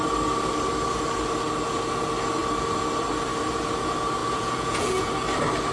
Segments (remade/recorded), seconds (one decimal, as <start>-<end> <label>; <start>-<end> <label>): 0.0-4.2 recorded; 4.2-5.1 remade; 5.1-5.7 recorded